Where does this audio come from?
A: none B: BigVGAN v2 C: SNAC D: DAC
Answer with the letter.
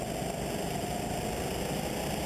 A